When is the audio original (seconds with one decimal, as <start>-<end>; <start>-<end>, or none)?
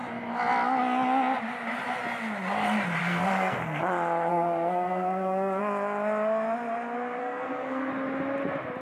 0.0-3.0; 3.8-4.3; 5.6-7.2; 7.9-8.8